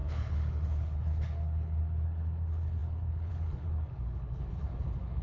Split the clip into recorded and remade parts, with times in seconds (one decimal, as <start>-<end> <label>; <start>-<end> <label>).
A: 0.0-5.2 remade